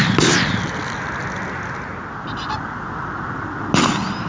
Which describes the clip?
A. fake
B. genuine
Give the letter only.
B